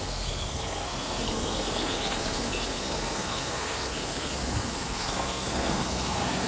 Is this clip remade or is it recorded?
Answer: remade